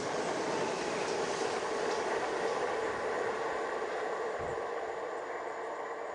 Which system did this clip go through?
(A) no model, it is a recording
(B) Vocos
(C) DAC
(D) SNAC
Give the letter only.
A